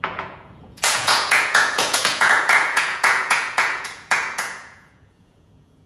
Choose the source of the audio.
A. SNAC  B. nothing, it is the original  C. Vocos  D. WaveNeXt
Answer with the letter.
C